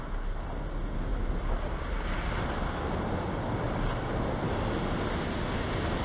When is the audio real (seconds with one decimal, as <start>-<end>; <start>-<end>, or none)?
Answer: 0.0-6.0